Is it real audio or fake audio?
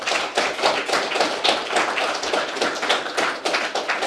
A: real